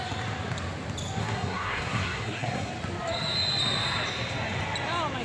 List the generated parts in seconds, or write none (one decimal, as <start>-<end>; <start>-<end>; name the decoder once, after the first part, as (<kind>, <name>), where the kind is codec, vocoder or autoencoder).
1.2-2.7 (codec, SNAC)